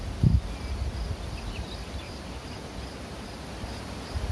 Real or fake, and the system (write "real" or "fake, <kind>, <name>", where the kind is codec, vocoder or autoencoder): real